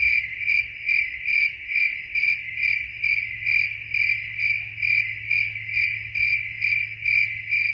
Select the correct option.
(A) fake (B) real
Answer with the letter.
B